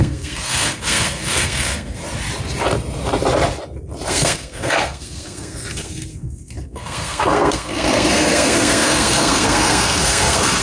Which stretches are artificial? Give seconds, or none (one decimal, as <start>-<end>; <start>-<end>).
0.0-2.0; 4.1-10.6